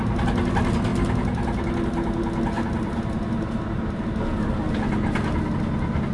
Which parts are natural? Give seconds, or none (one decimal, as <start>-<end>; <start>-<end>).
0.0-6.1

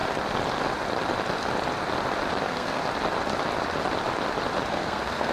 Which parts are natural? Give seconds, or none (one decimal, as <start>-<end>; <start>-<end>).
0.0-2.4; 2.8-4.7

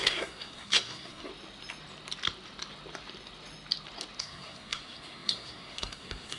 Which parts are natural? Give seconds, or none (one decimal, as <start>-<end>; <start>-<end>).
1.3-4.2

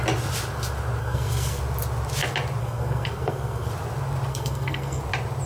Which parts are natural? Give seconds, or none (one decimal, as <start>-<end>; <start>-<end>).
0.0-1.0; 1.6-2.6; 3.7-4.3; 5.0-5.5

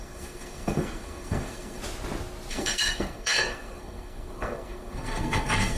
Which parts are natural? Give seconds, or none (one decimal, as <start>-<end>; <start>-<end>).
1.8-2.5

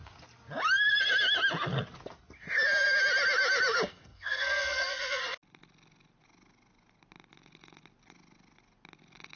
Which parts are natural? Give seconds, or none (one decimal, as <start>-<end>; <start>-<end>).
0.0-3.9; 5.2-9.4

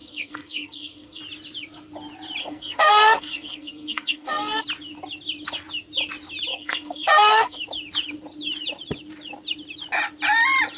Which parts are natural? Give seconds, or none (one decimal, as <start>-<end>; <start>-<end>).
1.2-2.4; 4.6-6.5; 7.6-10.8